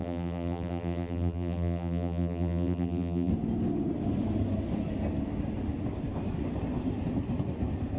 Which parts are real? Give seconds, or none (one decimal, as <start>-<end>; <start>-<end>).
3.3-8.0